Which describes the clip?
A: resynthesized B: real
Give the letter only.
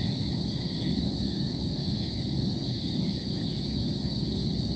A